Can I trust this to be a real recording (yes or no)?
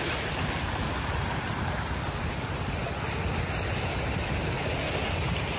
yes